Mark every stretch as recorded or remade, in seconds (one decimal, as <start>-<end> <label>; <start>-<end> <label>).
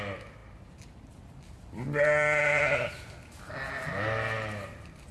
0.0-5.1 recorded